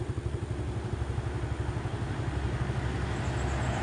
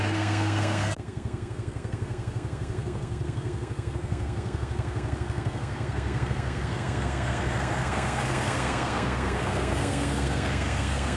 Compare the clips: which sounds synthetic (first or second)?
second